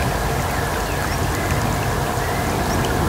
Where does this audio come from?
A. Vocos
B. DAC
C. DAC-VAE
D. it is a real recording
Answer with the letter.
D